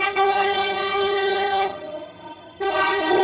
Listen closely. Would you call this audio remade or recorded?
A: remade